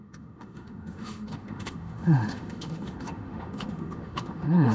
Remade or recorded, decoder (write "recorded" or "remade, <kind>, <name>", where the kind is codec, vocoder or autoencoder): remade, autoencoder, DAC-VAE